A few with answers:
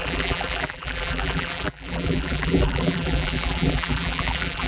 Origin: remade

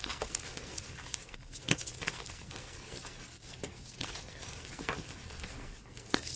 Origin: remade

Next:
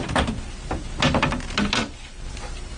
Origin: recorded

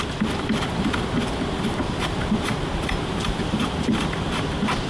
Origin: remade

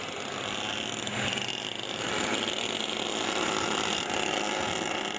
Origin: recorded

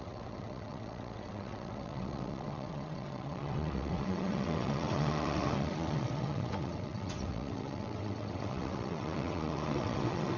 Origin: remade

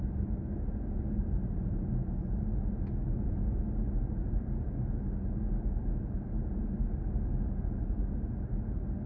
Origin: recorded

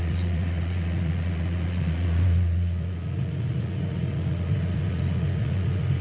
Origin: remade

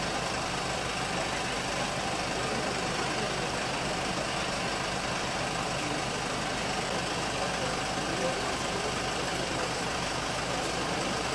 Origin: recorded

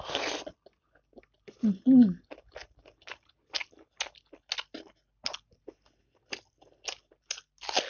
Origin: recorded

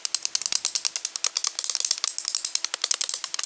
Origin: recorded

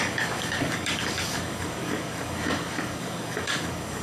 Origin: remade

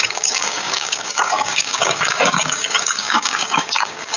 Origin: remade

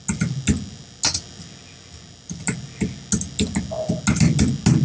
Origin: recorded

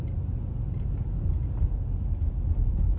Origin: recorded